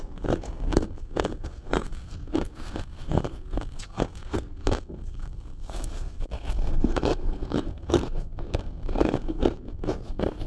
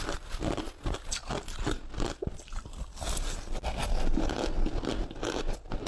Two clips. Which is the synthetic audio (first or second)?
first